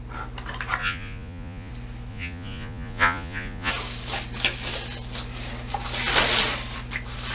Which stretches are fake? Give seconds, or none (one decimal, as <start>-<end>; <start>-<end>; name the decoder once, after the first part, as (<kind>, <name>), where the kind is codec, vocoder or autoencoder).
0.8-1.7 (vocoder, Vocos); 2.1-3.7